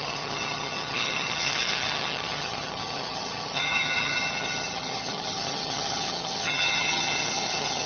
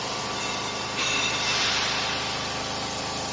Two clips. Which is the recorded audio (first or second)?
second